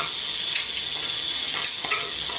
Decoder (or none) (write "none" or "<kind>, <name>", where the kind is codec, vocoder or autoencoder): vocoder, HiFi-GAN